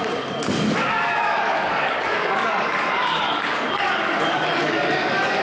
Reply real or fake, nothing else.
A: fake